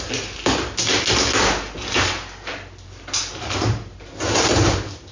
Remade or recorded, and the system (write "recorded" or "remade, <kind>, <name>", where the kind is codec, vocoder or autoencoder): recorded